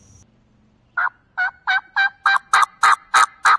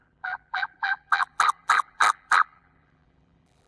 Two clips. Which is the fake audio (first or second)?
second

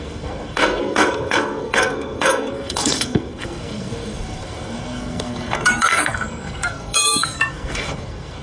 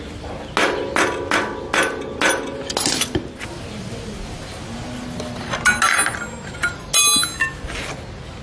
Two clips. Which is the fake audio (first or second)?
first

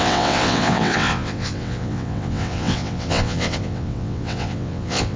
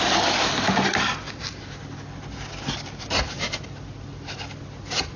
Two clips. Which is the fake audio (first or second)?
first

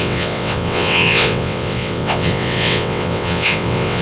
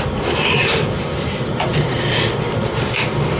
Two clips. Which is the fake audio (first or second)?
first